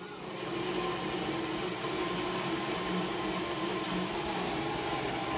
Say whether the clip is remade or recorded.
recorded